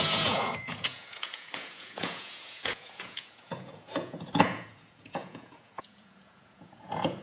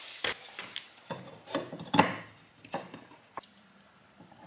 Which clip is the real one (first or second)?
second